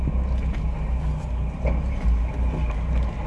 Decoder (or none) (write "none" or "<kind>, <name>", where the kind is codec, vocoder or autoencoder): none